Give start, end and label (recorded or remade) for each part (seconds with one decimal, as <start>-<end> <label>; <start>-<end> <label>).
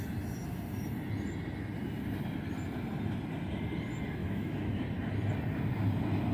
0.0-4.2 recorded; 4.2-4.8 remade; 4.8-6.3 recorded